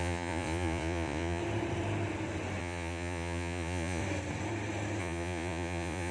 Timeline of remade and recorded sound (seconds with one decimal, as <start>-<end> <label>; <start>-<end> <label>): 0.0-1.4 remade; 1.4-2.6 recorded; 2.6-4.0 remade; 4.0-5.0 recorded; 5.0-6.1 remade